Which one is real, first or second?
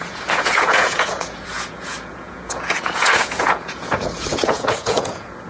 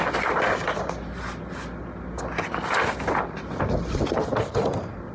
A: second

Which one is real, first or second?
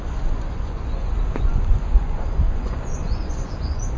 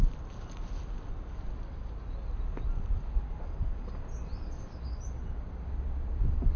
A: second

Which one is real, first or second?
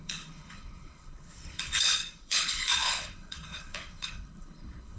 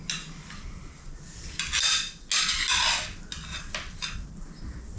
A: second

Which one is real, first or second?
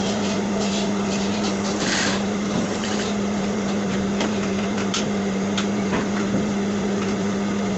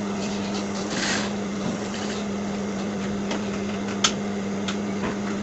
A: second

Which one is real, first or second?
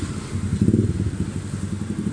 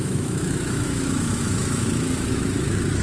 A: first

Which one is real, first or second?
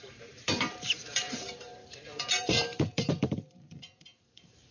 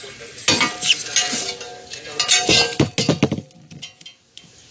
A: second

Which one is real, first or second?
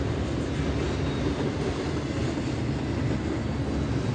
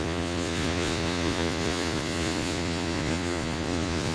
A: first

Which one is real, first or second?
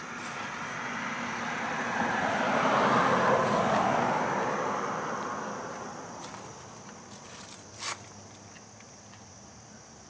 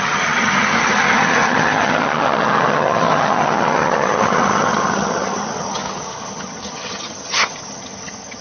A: first